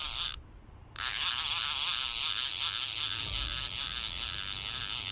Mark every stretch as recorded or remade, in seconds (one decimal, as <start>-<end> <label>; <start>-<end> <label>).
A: 0.0-5.1 recorded